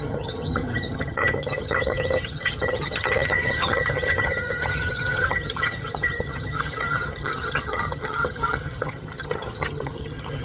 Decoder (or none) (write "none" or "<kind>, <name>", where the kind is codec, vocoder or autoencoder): vocoder, HiFi-GAN